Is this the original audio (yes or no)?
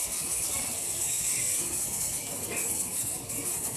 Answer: no